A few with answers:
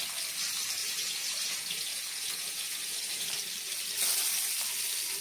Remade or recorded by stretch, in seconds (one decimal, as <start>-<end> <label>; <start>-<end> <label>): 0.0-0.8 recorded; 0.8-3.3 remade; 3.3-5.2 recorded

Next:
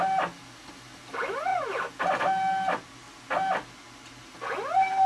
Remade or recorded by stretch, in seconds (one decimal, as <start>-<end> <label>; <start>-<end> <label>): 0.0-5.1 recorded

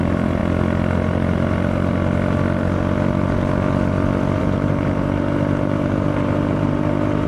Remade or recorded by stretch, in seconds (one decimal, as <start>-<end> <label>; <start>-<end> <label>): 0.0-0.4 remade; 0.4-4.4 recorded; 4.4-7.3 remade

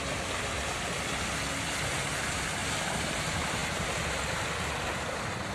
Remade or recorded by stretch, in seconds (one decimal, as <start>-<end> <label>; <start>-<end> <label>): 0.0-5.5 recorded

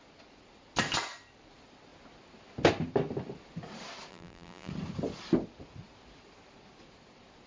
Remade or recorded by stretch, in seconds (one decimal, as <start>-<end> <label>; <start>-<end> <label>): 0.0-4.1 recorded; 4.1-4.7 remade; 4.7-7.5 recorded

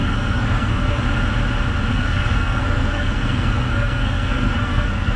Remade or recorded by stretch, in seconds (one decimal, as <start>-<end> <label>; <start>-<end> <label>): 0.0-1.0 remade; 1.0-1.9 recorded; 1.9-5.2 remade

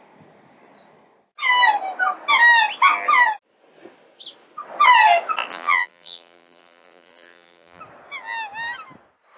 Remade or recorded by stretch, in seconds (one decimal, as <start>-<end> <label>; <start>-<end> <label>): 0.0-5.5 recorded; 5.5-7.8 remade; 7.8-9.4 recorded